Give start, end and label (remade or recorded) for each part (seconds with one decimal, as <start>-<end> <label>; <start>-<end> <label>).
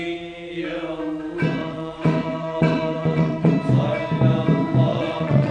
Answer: 0.0-1.6 recorded; 1.6-3.5 remade; 3.5-4.9 recorded; 4.9-5.5 remade